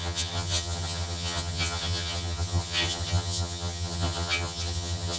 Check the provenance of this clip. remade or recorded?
remade